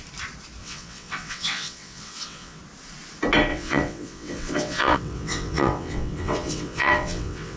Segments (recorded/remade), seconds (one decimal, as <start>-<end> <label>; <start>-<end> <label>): 0.0-0.6 recorded; 0.6-2.6 remade; 2.6-3.5 recorded; 3.5-7.6 remade